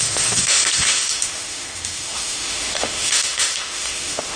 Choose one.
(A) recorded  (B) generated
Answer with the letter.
B